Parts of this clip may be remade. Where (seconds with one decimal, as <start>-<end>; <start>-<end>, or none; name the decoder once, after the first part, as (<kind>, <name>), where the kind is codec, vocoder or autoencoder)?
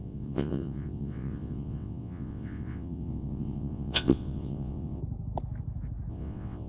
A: 0.0-5.0 (vocoder, WaveNeXt); 6.1-6.7